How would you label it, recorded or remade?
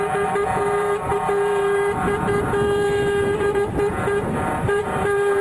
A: remade